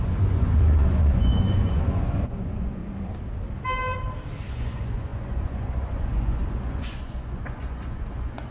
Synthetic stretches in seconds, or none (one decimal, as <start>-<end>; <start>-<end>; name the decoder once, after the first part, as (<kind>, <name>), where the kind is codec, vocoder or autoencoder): 0.0-2.8 (vocoder, Vocos); 4.5-8.5